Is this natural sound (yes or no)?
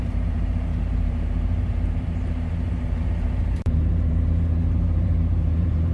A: no